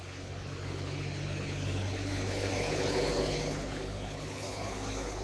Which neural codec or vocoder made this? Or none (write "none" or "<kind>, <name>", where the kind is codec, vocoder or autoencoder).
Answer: codec, HILCodec